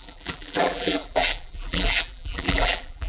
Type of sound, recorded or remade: remade